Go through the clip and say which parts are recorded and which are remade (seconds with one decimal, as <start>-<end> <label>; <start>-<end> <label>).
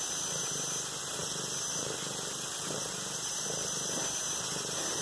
0.0-5.0 recorded